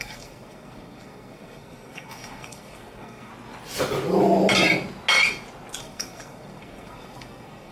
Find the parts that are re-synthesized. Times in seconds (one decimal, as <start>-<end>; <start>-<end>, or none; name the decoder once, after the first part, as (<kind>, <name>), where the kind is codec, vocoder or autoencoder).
0.0-3.3 (codec, SNAC); 5.8-7.7